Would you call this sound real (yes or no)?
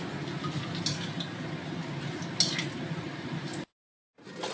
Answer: yes